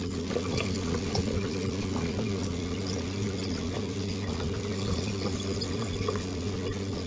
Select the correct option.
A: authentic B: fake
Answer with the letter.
B